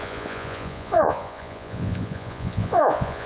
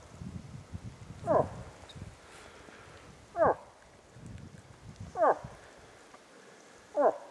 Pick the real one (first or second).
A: second